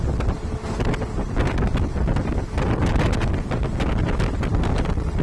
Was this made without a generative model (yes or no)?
yes